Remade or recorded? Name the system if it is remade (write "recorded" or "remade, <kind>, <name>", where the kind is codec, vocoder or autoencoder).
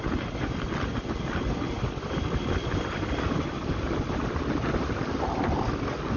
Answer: recorded